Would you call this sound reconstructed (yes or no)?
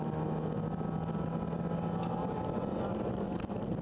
no